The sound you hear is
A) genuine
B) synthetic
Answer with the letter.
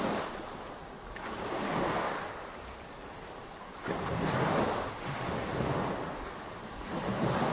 A